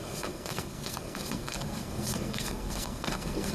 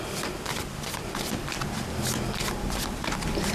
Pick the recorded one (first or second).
second